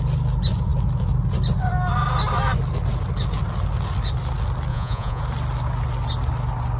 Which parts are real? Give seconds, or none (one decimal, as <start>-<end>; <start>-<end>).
0.0-4.7; 5.2-6.8